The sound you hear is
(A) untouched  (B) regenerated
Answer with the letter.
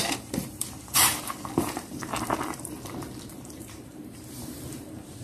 B